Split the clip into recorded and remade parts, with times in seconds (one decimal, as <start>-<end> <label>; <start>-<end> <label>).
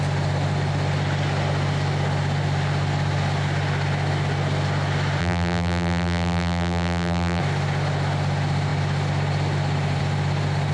0.0-5.2 recorded; 5.2-7.4 remade; 7.4-10.7 recorded